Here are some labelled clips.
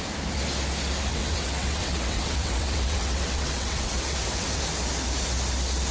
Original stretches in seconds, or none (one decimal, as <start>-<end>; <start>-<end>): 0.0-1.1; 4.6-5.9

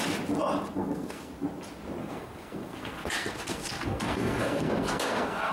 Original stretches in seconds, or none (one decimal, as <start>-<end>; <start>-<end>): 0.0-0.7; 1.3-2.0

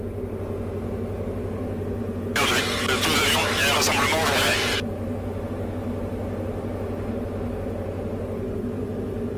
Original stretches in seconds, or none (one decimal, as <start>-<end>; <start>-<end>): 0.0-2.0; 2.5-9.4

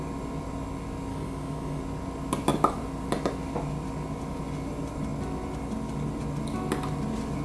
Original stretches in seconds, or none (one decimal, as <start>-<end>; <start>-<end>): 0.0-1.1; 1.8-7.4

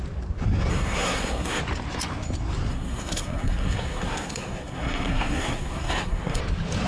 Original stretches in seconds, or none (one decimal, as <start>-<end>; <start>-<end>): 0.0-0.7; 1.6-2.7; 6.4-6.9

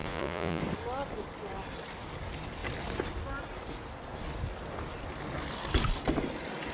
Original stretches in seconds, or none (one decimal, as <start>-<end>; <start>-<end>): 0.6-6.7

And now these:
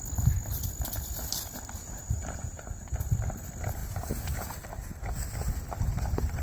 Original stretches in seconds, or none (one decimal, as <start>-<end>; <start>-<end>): 0.0-1.8; 3.0-6.4

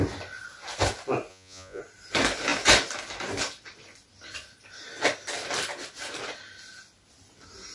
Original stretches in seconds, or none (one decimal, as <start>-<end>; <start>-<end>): 0.0-1.3; 1.8-7.7